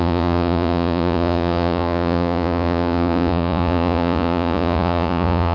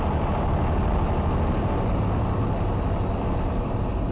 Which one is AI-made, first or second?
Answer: first